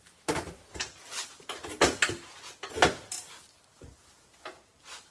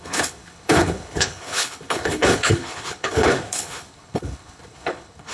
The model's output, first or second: second